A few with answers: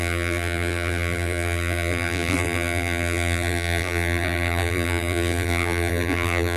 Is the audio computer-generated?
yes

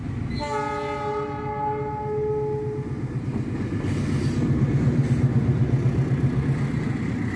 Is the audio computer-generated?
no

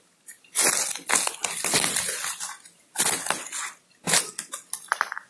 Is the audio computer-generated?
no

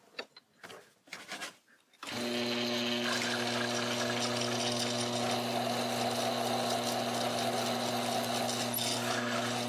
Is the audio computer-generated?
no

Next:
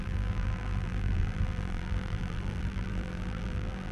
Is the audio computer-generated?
yes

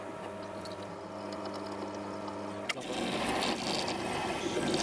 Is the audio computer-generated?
no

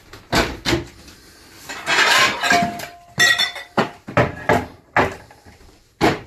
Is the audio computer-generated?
no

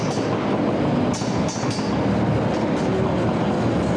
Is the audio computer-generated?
no